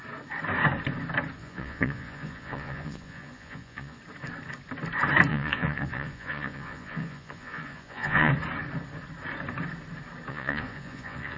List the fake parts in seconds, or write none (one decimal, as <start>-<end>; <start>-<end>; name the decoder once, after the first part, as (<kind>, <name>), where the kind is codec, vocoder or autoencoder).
1.4-4.0 (vocoder, Vocos); 5.3-8.3; 10.3-11.4